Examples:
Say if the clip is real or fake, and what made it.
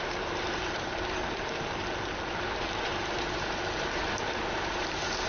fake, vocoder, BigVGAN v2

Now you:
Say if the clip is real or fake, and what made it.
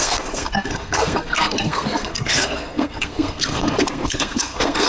fake, codec, SNAC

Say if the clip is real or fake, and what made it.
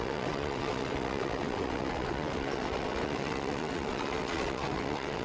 fake, vocoder, WaveNeXt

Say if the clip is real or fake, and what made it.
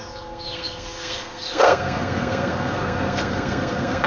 fake, codec, SNAC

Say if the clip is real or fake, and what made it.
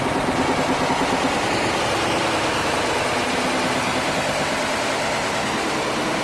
real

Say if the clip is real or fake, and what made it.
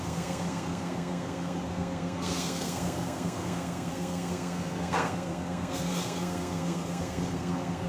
fake, codec, SNAC